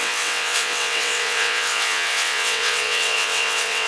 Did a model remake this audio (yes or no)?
yes